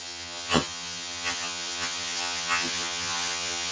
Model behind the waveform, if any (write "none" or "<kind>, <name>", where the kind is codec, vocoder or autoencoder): vocoder, HiFi-GAN